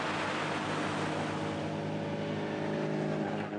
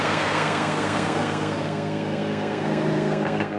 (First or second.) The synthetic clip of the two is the second